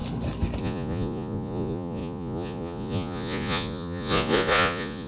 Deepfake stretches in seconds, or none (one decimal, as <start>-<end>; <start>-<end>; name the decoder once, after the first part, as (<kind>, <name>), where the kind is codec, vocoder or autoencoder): 0.6-5.1 (vocoder, Vocos)